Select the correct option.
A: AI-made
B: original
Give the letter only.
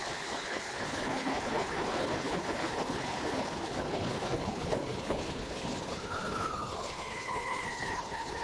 A